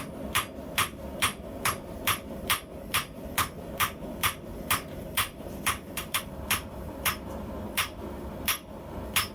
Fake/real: fake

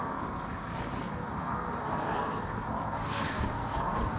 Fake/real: fake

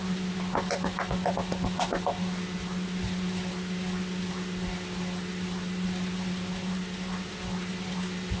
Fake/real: real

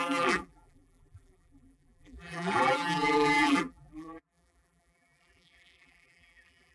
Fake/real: fake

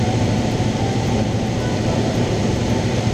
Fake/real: fake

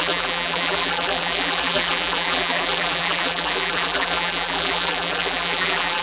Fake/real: fake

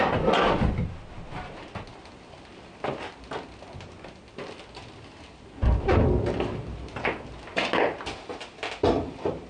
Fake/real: real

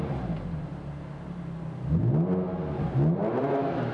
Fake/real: real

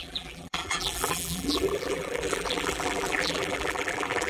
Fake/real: fake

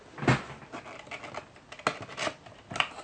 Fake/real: real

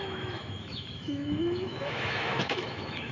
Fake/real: fake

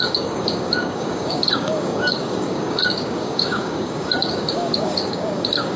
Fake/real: fake